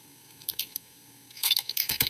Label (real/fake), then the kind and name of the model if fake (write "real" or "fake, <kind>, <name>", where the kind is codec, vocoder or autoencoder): fake, codec, SNAC